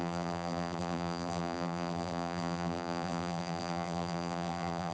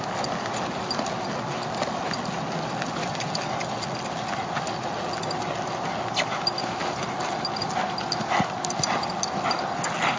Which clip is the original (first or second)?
second